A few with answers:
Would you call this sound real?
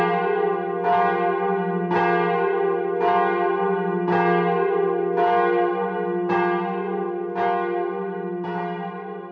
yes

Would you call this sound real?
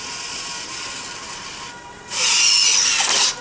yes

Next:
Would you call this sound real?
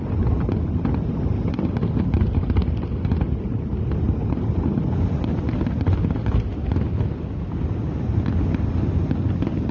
yes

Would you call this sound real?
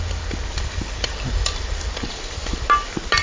yes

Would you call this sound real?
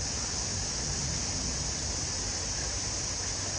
yes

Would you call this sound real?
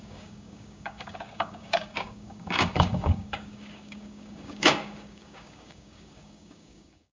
no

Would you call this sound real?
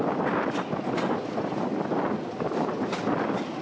yes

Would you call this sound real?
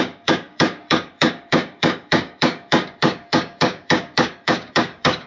no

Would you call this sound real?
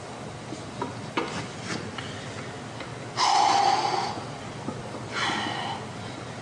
yes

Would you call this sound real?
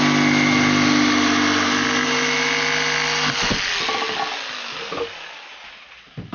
yes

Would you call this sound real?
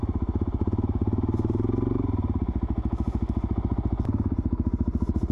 yes